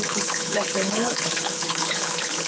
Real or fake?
fake